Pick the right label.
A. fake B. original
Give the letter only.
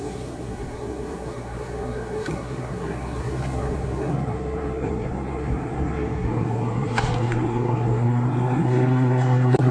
A